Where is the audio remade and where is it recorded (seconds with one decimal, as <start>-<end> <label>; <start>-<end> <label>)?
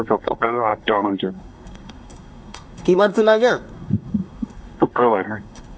0.0-5.8 remade